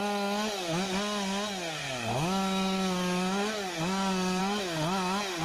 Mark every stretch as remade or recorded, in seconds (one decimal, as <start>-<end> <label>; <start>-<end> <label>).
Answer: 0.0-1.8 recorded; 1.8-4.4 remade; 4.4-5.4 recorded